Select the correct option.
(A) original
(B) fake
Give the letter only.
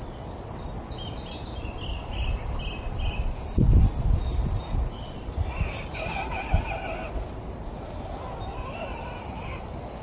A